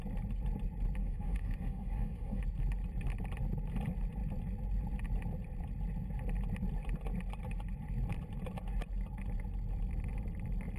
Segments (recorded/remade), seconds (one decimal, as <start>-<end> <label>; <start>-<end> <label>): 0.0-1.0 recorded; 1.0-2.4 remade; 2.4-10.8 recorded